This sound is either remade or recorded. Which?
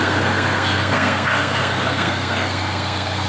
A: remade